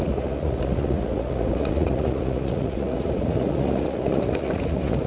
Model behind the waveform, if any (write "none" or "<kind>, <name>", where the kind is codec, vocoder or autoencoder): vocoder, Vocos